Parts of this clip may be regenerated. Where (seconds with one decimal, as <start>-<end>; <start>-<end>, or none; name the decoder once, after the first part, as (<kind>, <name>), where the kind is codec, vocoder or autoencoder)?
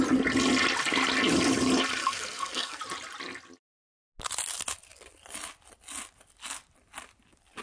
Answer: 2.0-2.8 (codec, SNAC)